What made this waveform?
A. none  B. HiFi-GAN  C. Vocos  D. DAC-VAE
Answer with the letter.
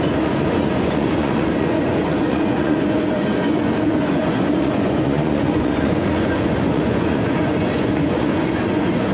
C